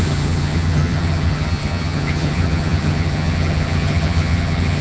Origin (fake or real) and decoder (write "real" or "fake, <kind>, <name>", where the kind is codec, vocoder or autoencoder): fake, vocoder, HiFi-GAN